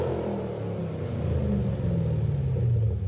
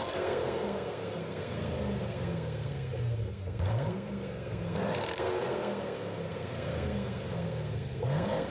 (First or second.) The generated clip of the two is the second